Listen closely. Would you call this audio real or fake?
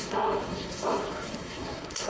fake